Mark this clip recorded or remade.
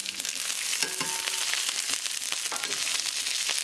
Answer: recorded